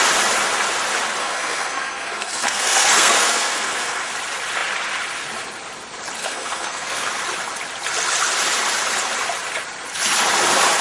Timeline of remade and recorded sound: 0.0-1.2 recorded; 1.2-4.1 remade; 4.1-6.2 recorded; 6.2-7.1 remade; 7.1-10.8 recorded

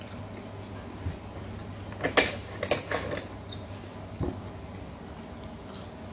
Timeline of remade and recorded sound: 0.0-6.1 recorded

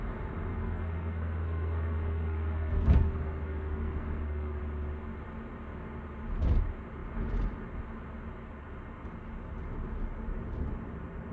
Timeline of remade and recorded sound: 0.0-0.5 recorded; 0.5-4.6 remade; 4.6-11.3 recorded

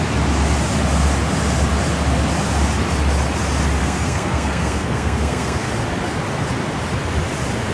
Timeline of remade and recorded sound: 0.0-3.8 recorded; 3.8-5.7 remade; 5.7-7.7 recorded

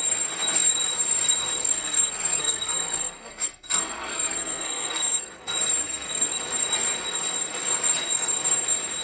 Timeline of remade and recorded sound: 0.0-1.8 recorded; 1.8-5.3 remade; 5.3-5.8 recorded; 5.8-6.4 remade; 6.4-9.0 recorded

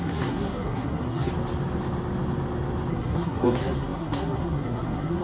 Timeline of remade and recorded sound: 0.0-1.3 remade; 1.3-2.9 recorded; 2.9-5.2 remade